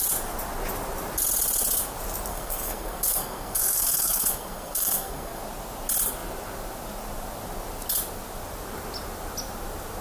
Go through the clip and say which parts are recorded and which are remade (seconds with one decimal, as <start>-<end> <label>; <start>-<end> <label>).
0.0-2.3 recorded; 2.3-5.4 remade; 5.4-10.0 recorded